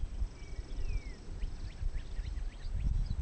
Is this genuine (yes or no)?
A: yes